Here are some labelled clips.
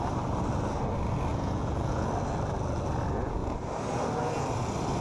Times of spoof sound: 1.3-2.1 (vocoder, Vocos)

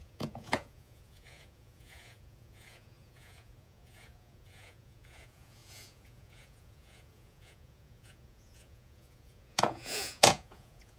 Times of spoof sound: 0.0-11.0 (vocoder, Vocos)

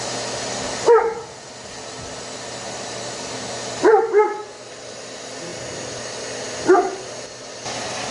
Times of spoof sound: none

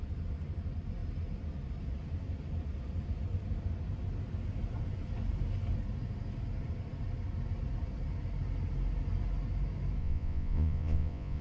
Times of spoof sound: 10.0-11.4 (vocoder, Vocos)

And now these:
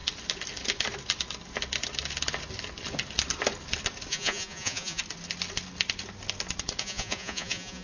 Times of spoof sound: 4.1-5.0 (vocoder, Vocos); 6.8-7.8

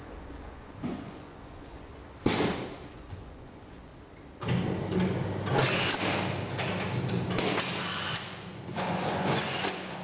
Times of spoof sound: 0.0-1.9 (vocoder, Vocos); 2.9-3.9; 7.9-10.0